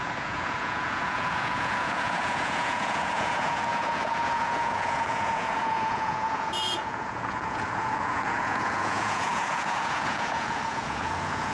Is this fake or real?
fake